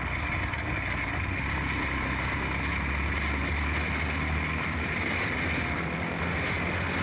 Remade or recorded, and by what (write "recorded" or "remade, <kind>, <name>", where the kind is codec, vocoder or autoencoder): recorded